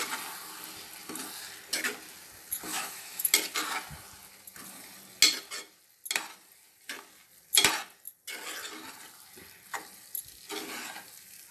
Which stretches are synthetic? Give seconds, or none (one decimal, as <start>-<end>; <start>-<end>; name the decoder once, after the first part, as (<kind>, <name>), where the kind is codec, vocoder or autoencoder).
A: 2.7-3.3 (autoencoder, DAC-VAE)